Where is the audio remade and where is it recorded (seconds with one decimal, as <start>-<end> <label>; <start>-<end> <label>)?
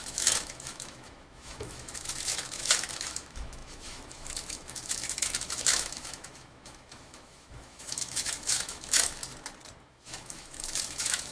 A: 0.0-9.2 remade; 9.2-9.8 recorded; 9.8-11.3 remade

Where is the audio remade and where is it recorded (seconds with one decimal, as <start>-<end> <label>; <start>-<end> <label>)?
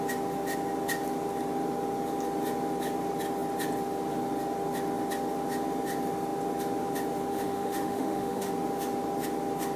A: 0.0-7.3 recorded; 7.3-8.5 remade; 8.5-9.8 recorded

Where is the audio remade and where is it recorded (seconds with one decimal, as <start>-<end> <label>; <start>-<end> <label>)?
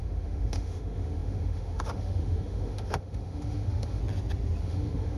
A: 0.0-4.0 remade; 4.0-4.6 recorded; 4.6-5.2 remade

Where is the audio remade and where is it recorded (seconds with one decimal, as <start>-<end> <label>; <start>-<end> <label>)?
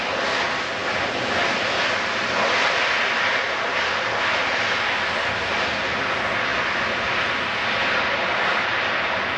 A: 0.0-9.4 recorded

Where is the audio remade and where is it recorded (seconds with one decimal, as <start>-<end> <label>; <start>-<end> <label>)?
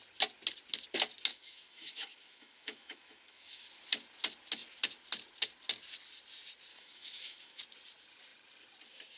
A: 0.0-1.3 recorded; 1.3-3.7 remade; 3.7-6.7 recorded; 6.7-7.6 remade; 7.6-9.2 recorded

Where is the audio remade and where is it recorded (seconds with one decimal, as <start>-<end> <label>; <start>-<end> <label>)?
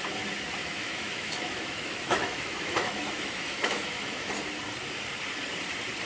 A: 0.0-0.6 recorded; 0.6-4.3 remade; 4.3-6.1 recorded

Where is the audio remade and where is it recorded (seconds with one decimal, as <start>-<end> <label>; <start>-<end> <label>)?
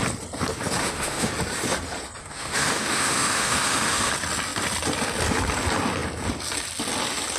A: 0.0-0.8 recorded; 0.8-1.3 remade; 1.3-2.2 recorded; 2.2-4.1 remade; 4.1-7.4 recorded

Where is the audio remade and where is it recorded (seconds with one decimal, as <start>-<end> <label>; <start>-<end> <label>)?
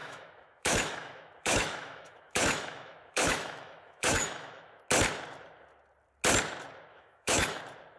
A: 0.0-4.8 remade; 4.8-6.9 recorded; 6.9-7.6 remade; 7.6-8.0 recorded